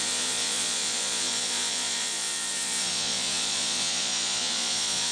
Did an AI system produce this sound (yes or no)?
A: yes